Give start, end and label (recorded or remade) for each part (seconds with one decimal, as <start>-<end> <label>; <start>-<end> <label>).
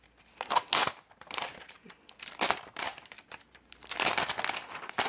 0.0-0.8 recorded; 0.8-3.9 remade; 3.9-5.1 recorded